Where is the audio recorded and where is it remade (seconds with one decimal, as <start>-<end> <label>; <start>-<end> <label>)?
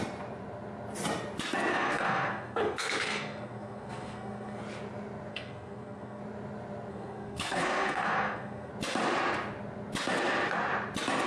0.0-1.7 recorded; 1.7-4.6 remade; 4.6-5.3 recorded; 5.3-6.2 remade; 6.2-6.9 recorded; 6.9-8.7 remade; 8.7-11.3 recorded